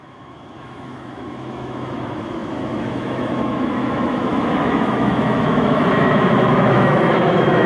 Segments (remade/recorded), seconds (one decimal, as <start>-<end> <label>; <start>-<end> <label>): 0.0-7.7 remade